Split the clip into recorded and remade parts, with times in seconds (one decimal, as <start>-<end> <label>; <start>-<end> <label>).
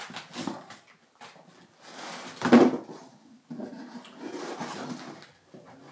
0.0-5.9 recorded